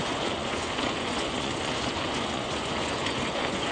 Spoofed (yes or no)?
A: yes